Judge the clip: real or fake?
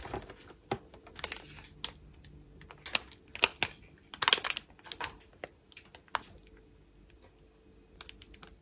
real